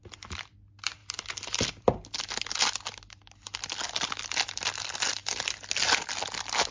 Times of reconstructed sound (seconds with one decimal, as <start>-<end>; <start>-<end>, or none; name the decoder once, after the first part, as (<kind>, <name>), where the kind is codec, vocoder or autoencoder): none

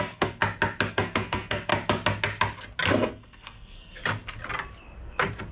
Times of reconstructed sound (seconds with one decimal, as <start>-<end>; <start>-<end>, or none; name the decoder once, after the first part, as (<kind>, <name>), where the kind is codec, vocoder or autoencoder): 0.0-0.4 (codec, SNAC); 0.9-1.7; 2.9-4.0

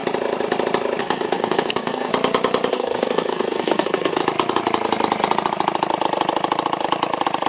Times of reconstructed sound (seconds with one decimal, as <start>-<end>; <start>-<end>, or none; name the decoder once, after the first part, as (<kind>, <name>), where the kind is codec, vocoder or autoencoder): 1.0-2.1 (codec, SNAC); 2.7-4.2

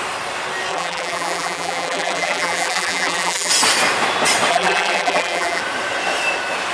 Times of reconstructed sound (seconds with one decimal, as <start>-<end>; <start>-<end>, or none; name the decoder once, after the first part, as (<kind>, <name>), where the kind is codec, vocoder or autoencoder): 0.7-3.5 (vocoder, BigVGAN v2); 4.5-5.6

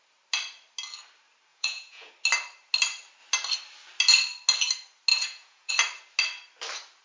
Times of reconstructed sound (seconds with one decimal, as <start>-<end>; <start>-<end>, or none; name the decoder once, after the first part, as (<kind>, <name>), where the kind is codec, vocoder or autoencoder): 1.5-2.1 (vocoder, Vocos); 5.1-5.7

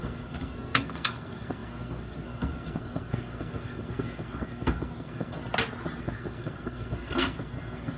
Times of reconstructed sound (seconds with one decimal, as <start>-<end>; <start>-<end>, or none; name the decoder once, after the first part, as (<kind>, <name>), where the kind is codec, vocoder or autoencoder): 0.0-5.4 (codec, SNAC); 6.0-8.0

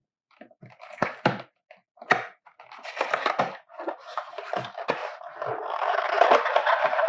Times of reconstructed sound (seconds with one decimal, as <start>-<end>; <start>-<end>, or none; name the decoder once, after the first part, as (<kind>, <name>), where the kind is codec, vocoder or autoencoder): 0.0-5.0 (vocoder, BigVGAN v2); 5.5-7.1

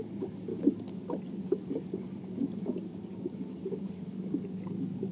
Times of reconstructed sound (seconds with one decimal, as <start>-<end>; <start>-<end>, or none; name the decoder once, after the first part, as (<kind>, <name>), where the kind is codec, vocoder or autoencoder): 0.5-1.1 (codec, DAC); 1.6-5.1